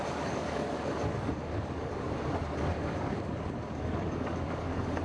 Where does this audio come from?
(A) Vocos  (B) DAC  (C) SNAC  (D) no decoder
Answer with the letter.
B